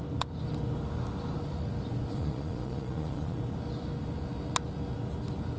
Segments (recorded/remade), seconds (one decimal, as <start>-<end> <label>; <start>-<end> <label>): 0.0-2.1 recorded; 2.1-3.4 remade; 3.4-5.6 recorded